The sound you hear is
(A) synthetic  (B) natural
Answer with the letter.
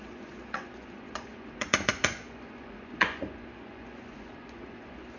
A